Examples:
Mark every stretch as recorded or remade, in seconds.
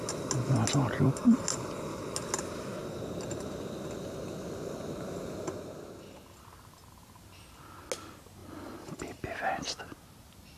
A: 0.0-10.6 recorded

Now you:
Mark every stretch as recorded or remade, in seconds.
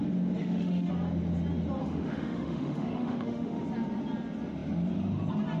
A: 0.0-0.4 recorded; 0.4-0.9 remade; 0.9-1.8 recorded; 1.8-3.6 remade; 3.6-5.6 recorded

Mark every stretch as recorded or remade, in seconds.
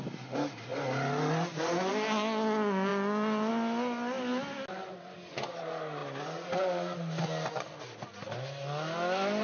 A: 0.0-9.4 recorded